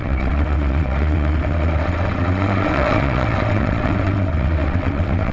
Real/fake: fake